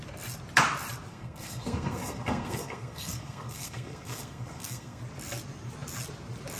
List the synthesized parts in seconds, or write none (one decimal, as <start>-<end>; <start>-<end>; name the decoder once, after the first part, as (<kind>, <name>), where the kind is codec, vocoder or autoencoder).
1.1-5.0 (codec, SNAC)